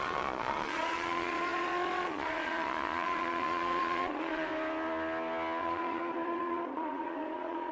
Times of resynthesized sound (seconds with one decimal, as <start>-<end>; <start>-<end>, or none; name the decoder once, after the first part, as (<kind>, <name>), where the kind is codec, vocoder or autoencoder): 0.0-4.5 (vocoder, Vocos); 5.6-7.7